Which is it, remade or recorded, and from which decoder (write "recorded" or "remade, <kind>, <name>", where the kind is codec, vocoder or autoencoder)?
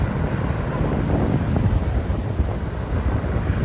recorded